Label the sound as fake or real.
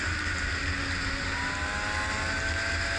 real